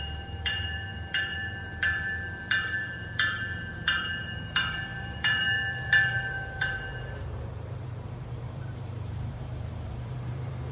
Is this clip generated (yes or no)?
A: yes